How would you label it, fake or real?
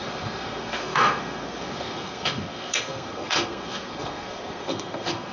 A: fake